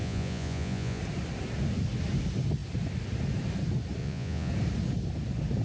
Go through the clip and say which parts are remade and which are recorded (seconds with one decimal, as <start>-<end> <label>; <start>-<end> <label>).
0.0-1.0 remade; 1.0-4.0 recorded; 4.0-4.5 remade; 4.5-5.6 recorded